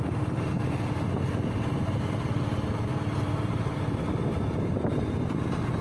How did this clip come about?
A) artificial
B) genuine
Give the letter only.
B